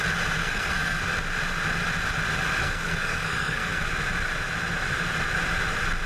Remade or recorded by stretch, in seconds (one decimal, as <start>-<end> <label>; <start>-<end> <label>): 0.0-0.4 recorded; 0.4-1.0 remade; 1.0-2.6 recorded; 2.6-3.9 remade; 3.9-6.1 recorded